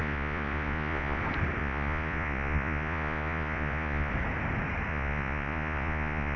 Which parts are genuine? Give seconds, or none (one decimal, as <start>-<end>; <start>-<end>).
1.2-1.6; 4.1-4.9